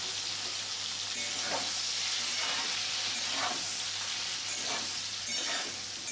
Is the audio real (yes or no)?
yes